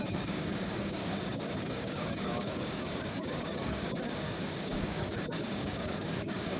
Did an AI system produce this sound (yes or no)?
yes